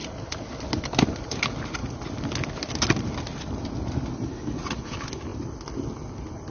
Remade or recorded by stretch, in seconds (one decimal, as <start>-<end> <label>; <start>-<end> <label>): 0.0-6.5 recorded